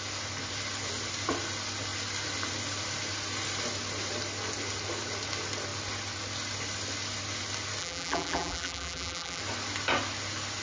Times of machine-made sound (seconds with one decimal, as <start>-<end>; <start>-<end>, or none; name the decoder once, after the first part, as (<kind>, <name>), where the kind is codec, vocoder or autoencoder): 7.8-9.4 (vocoder, BigVGAN v2)